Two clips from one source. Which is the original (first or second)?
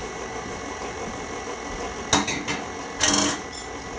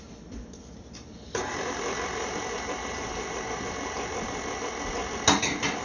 first